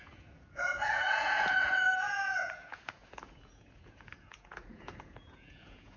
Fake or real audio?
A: fake